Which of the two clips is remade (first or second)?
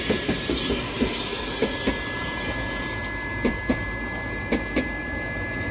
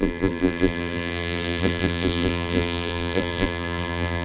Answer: second